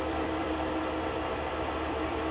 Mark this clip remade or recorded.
remade